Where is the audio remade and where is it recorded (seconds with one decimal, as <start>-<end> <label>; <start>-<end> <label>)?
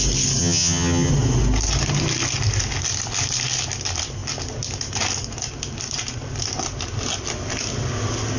0.0-0.4 recorded; 0.4-1.1 remade; 1.1-8.4 recorded